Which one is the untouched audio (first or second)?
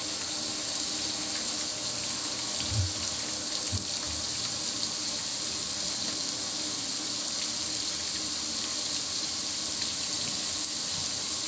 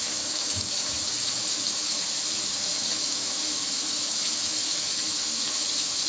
first